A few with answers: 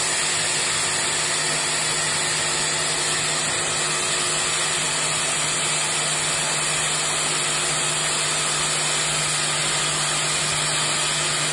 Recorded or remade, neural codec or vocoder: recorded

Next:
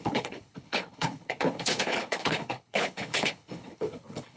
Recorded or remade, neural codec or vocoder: remade, codec, HILCodec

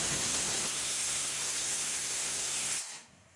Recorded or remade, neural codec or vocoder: remade, codec, SNAC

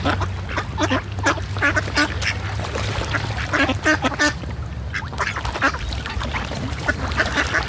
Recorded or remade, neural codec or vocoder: recorded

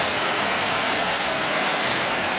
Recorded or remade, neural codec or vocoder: remade, codec, SNAC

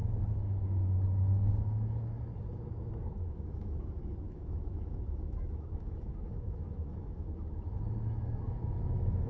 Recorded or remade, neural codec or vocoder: remade, autoencoder, DAC-VAE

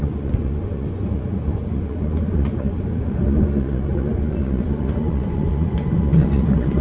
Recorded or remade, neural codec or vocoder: remade, vocoder, Vocos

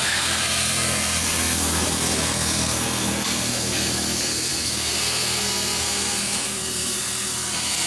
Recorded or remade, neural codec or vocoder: remade, codec, SNAC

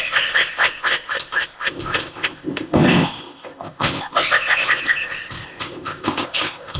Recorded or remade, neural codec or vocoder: remade, codec, ZipCodec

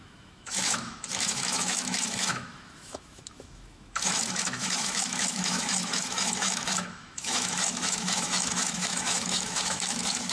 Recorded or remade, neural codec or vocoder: remade, autoencoder, DAC-VAE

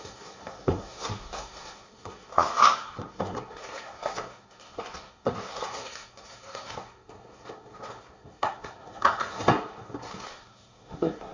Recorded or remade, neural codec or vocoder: remade, codec, SNAC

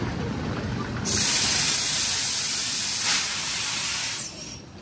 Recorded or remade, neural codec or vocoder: remade, vocoder, BigVGAN v2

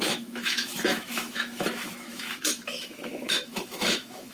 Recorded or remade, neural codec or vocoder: remade, autoencoder, DAC-VAE